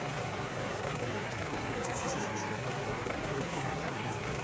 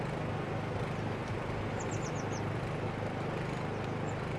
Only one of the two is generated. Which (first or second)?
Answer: first